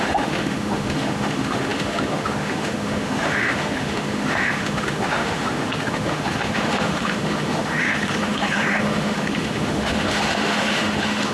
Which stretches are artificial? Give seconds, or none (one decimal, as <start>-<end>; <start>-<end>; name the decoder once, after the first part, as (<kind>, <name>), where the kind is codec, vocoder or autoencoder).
0.0-11.3 (autoencoder, DAC-VAE)